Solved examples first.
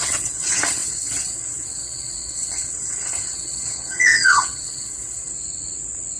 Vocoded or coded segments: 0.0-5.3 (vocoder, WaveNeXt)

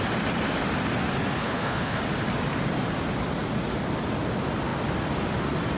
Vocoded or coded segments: 1.4-2.0 (codec, HILCodec)

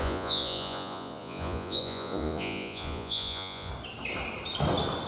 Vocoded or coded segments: 0.0-3.7 (vocoder, Vocos)

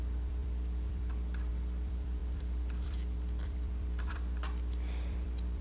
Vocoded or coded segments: 0.0-5.6 (vocoder, BigVGAN v2)

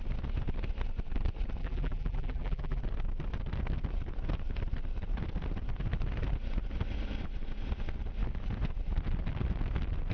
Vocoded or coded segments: 1.6-2.8 (vocoder, BigVGAN v2)

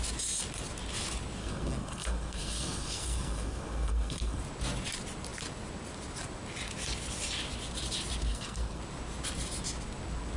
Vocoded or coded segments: 1.4-4.4 (codec, SNAC); 8.3-8.8

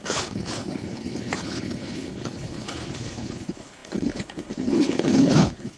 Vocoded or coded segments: 0.0-5.8 (codec, HILCodec)